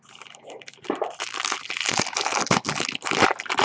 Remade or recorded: recorded